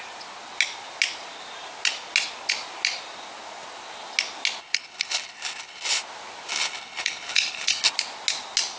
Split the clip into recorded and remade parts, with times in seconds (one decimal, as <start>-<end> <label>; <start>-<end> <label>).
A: 0.0-4.6 recorded; 4.6-6.0 remade; 6.0-6.5 recorded; 6.5-7.9 remade; 7.9-8.8 recorded